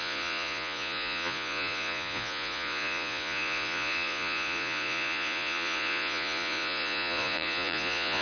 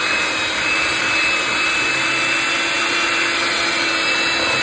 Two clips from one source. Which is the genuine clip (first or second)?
second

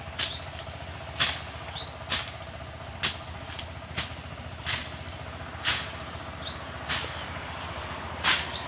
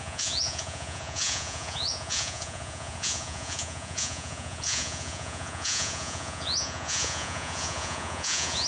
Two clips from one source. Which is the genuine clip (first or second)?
first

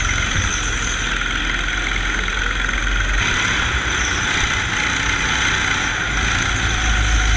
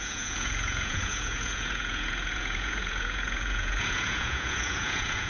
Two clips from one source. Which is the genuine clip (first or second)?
first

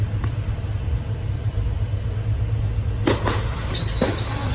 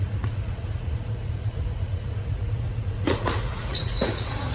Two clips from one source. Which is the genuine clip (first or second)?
first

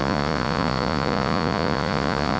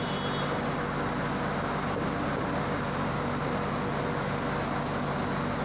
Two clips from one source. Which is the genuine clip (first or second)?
second